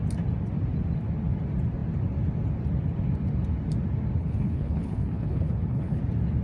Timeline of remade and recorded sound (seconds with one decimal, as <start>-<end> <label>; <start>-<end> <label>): 0.0-4.2 recorded; 4.2-6.0 remade; 6.0-6.4 recorded